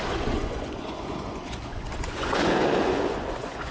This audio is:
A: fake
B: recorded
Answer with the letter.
A